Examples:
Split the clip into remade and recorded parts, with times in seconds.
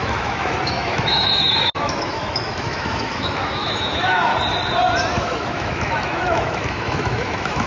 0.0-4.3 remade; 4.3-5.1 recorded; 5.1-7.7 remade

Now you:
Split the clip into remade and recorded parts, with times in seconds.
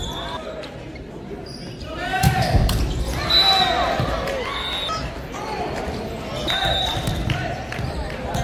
0.0-2.1 recorded; 2.1-2.8 remade; 2.8-8.4 recorded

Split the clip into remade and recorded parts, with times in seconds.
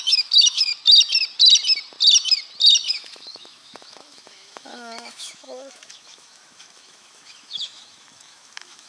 0.0-0.7 remade; 0.7-2.9 recorded; 2.9-8.9 remade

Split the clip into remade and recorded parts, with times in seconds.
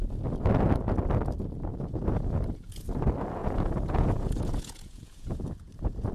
0.0-1.7 recorded; 1.7-2.9 remade; 2.9-3.4 recorded; 3.4-6.1 remade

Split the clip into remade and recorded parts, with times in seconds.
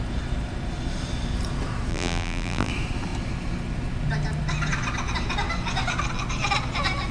0.0-1.9 recorded; 1.9-2.7 remade; 2.7-7.1 recorded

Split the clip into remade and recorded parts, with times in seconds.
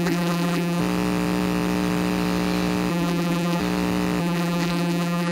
0.0-0.8 remade; 0.8-2.9 recorded; 2.9-3.6 remade; 3.6-4.2 recorded; 4.2-5.3 remade